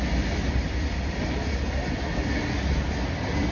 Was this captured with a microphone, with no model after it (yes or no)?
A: yes